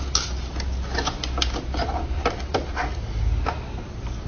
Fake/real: real